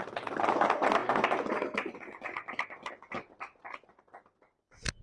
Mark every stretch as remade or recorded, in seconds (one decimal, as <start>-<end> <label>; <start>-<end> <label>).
0.0-5.0 recorded